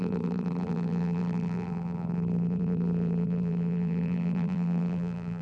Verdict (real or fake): fake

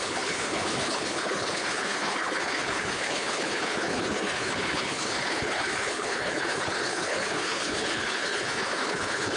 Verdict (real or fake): fake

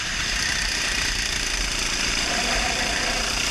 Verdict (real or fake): fake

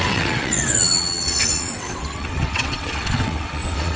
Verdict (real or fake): fake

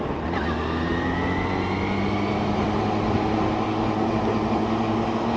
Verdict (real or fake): real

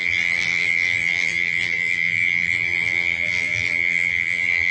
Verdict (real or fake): fake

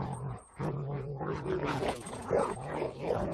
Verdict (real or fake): fake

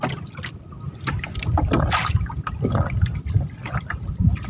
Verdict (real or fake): real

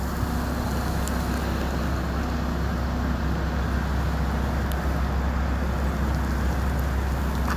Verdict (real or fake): real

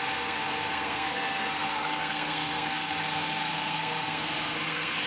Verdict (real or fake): fake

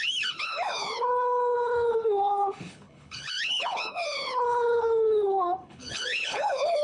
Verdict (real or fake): fake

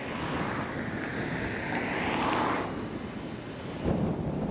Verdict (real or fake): real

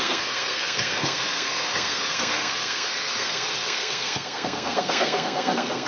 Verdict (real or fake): fake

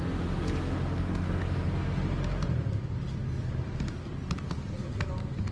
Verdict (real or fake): real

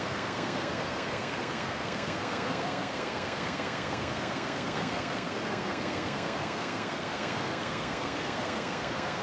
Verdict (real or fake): fake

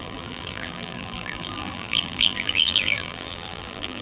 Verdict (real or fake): fake